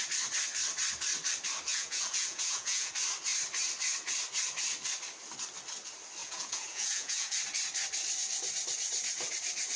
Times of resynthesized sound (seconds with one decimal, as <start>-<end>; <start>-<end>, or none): 1.7-2.9; 6.2-7.4